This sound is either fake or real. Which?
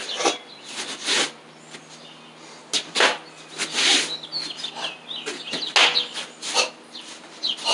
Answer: real